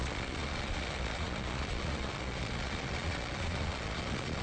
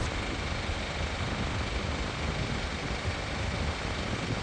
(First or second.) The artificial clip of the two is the first